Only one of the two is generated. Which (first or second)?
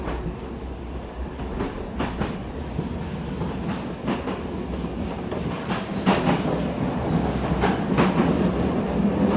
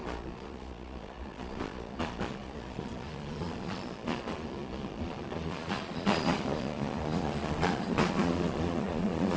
second